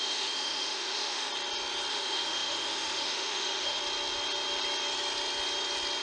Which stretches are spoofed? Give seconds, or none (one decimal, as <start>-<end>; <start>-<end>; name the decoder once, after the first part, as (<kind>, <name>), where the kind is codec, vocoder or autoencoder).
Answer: 0.0-1.3 (autoencoder, DAC-VAE); 1.9-3.8